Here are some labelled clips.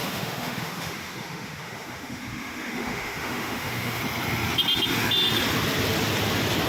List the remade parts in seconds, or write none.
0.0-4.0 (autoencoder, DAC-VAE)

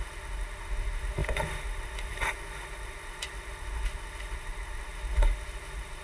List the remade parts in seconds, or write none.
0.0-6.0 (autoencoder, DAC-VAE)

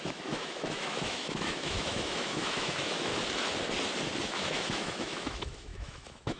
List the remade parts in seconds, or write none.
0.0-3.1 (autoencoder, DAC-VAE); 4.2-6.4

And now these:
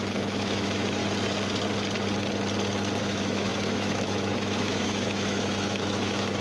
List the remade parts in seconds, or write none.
0.0-1.0 (autoencoder, DAC-VAE); 3.0-6.4

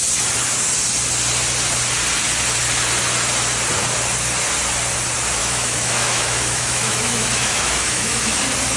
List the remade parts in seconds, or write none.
5.4-8.4 (autoencoder, DAC-VAE)

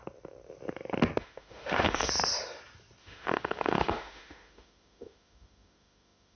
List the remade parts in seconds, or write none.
1.2-2.1 (autoencoder, DAC-VAE); 3.0-6.4